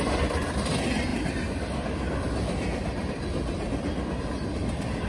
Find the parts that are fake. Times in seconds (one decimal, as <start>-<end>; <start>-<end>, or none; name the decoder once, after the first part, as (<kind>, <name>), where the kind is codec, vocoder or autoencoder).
none